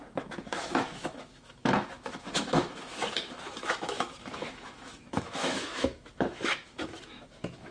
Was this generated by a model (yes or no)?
yes